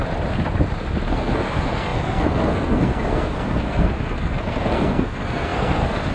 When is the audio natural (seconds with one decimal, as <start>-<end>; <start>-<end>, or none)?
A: 0.0-1.1